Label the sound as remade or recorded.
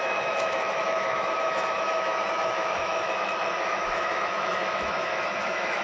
remade